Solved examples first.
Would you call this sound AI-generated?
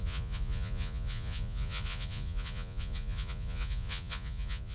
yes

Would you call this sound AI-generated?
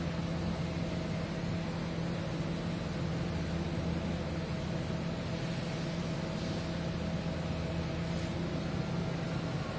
no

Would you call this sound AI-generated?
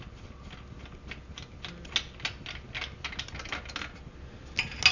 no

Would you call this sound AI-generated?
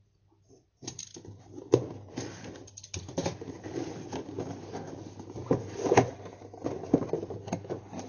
no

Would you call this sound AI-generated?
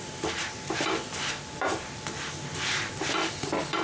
no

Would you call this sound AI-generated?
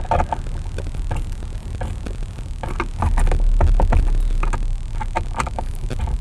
no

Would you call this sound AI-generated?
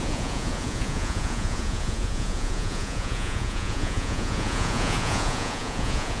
yes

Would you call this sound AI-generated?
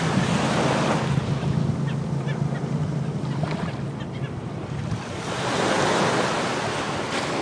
no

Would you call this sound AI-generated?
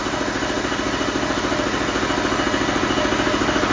no